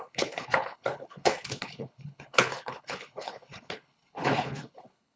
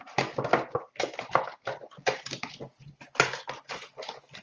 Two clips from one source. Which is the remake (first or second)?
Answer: first